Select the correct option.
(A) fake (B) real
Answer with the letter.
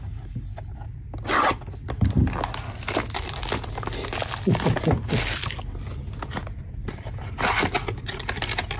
B